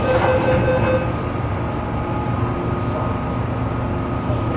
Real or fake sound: real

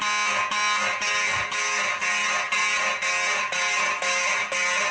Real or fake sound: real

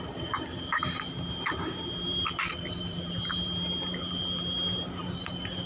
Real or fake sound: fake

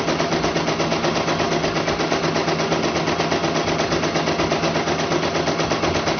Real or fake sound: real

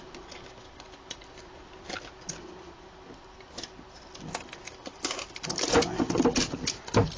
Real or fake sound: real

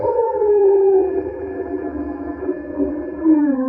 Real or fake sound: fake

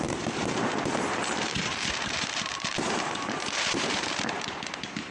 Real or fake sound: fake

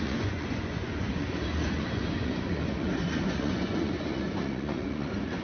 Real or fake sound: fake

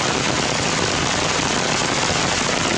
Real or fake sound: real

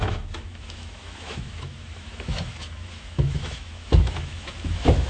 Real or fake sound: fake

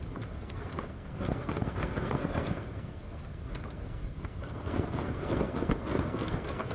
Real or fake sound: fake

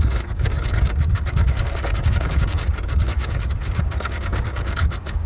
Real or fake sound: fake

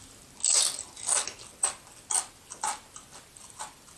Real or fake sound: real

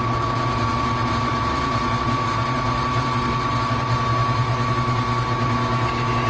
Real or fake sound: real